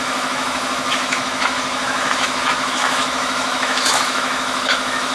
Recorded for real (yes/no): no